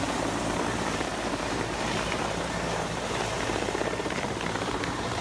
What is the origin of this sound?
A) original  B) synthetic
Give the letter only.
B